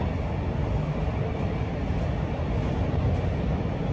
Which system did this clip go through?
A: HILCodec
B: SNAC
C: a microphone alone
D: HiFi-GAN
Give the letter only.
C